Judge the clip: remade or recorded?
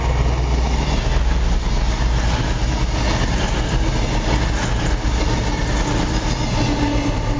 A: recorded